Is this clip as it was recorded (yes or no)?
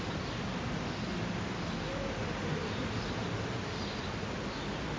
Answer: yes